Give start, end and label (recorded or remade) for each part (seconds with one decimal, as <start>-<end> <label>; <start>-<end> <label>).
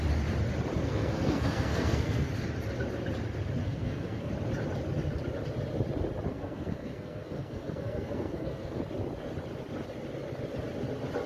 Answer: 0.0-0.8 recorded; 0.8-2.3 remade; 2.3-3.6 recorded; 3.6-4.3 remade; 4.3-6.3 recorded; 6.3-8.8 remade; 8.8-11.3 recorded